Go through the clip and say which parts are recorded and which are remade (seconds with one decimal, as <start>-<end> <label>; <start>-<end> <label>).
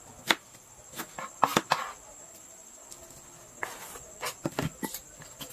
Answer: 0.0-5.5 recorded